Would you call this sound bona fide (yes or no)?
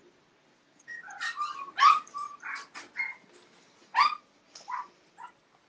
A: yes